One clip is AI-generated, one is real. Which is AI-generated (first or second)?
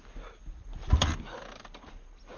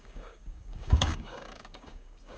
second